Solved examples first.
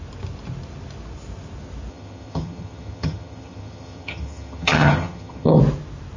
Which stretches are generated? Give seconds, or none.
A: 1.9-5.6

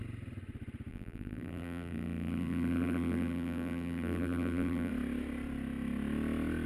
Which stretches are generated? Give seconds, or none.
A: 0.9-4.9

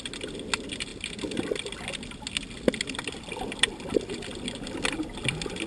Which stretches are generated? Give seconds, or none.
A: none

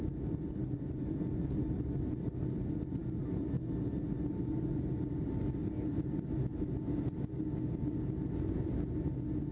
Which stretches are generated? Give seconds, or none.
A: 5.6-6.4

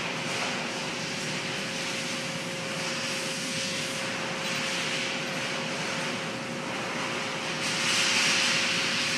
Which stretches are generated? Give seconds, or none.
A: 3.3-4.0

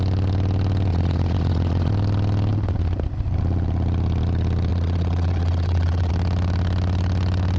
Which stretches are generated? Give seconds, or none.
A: 0.9-1.9; 4.7-6.1